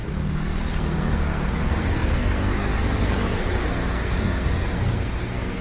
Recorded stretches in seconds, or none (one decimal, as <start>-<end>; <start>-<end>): none